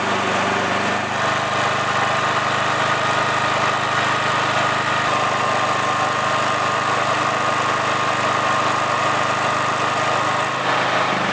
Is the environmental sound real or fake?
real